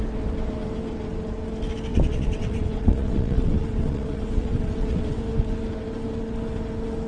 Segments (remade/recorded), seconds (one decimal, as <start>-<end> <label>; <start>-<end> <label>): 0.0-1.9 recorded; 1.9-5.2 remade; 5.2-7.1 recorded

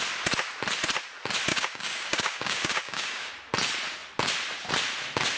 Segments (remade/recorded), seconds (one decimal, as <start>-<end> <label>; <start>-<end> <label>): 0.0-1.5 recorded; 1.5-3.3 remade; 3.3-5.4 recorded

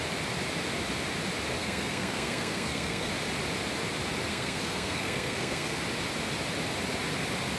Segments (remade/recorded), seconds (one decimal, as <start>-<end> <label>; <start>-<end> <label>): 0.0-1.6 recorded; 1.6-3.1 remade; 3.1-4.3 recorded; 4.3-5.8 remade; 5.8-7.6 recorded